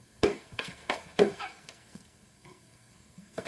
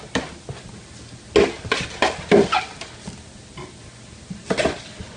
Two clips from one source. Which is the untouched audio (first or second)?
second